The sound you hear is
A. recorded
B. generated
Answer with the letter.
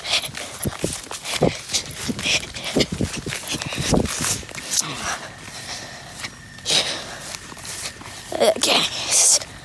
A